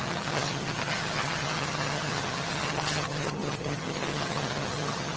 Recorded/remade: remade